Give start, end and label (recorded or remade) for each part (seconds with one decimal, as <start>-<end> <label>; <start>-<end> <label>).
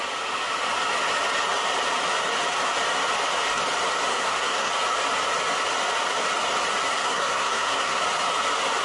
0.0-4.1 recorded; 4.1-4.7 remade; 4.7-6.9 recorded; 6.9-8.0 remade; 8.0-8.8 recorded